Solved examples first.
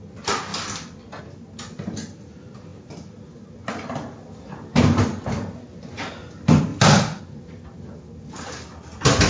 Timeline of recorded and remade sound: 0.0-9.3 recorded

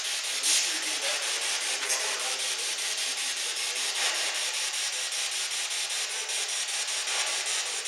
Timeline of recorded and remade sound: 0.0-1.1 recorded; 1.1-4.9 remade; 4.9-7.9 recorded

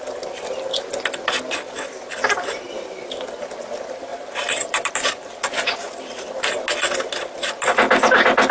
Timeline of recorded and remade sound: 0.0-4.1 recorded; 4.1-6.0 remade; 6.0-8.5 recorded

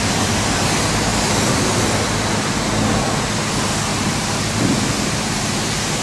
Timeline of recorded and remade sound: 0.0-3.9 recorded; 3.9-6.0 remade

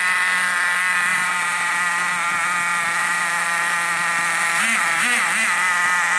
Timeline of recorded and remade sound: 0.0-1.1 recorded; 1.1-1.7 remade; 1.7-3.0 recorded; 3.0-3.6 remade; 3.6-4.4 recorded; 4.4-5.3 remade; 5.3-6.2 recorded

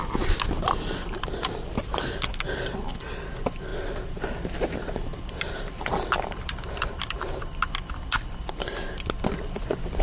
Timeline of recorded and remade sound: 0.0-3.7 recorded; 3.7-7.4 remade; 7.4-10.0 recorded

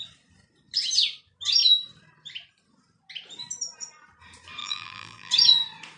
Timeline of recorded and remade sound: 0.0-4.6 recorded; 4.6-5.3 remade; 5.3-6.0 recorded

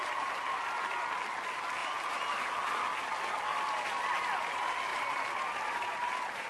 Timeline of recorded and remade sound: 0.0-0.8 remade; 0.8-1.8 recorded; 1.8-2.5 remade; 2.5-4.9 recorded; 4.9-6.5 remade